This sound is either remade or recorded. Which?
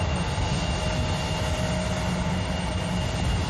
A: recorded